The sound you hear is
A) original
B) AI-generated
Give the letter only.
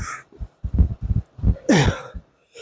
B